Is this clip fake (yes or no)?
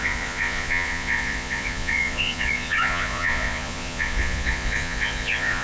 yes